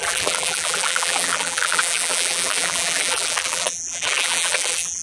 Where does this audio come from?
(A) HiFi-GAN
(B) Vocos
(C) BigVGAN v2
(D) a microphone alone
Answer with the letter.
C